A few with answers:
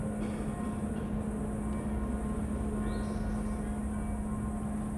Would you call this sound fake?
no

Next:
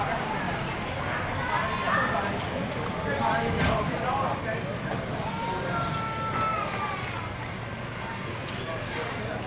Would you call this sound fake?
no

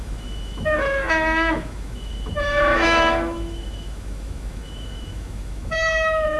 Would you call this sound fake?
yes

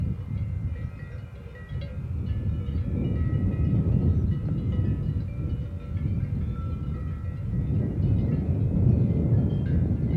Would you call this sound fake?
no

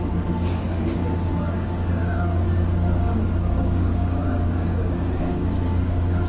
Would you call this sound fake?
yes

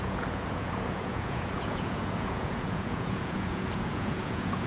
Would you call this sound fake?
yes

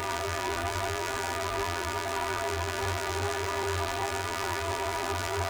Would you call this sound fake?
yes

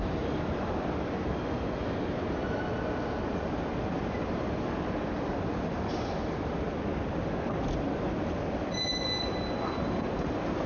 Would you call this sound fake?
no